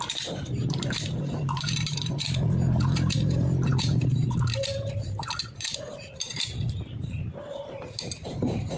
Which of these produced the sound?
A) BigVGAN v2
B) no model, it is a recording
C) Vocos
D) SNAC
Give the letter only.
A